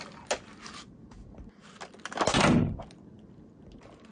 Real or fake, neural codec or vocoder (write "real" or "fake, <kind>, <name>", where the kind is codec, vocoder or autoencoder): real